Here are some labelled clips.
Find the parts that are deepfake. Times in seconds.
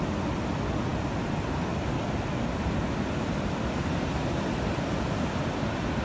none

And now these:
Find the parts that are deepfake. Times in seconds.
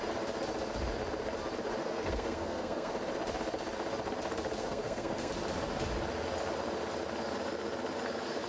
1.8-2.9; 4.6-5.3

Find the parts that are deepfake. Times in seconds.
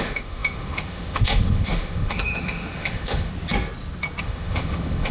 0.0-3.3; 4.2-5.1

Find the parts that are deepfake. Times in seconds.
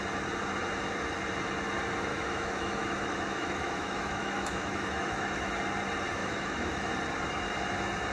2.1-5.5; 6.2-6.9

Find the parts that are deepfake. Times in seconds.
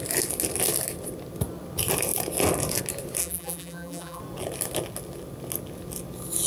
3.2-4.2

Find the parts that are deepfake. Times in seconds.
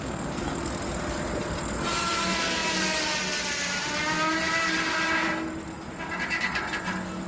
0.0-0.7